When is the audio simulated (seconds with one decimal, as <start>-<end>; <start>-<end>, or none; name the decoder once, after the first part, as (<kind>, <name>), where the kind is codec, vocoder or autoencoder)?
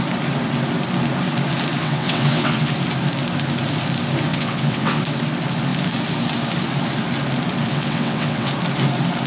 1.8-2.7 (vocoder, WaveNeXt); 4.3-5.0; 7.7-8.5